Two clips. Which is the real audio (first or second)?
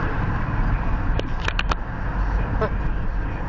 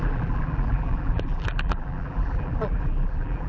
first